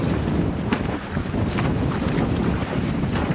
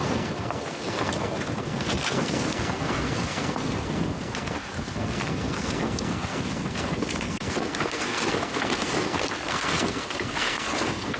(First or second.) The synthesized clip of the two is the second